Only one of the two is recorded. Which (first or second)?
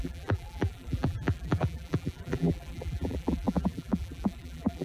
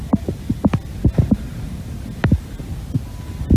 second